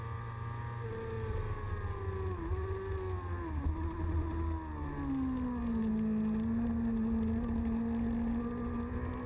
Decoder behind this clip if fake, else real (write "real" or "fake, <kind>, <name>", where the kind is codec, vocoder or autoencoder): real